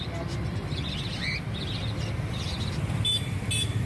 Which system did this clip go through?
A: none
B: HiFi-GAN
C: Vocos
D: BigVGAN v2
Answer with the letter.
A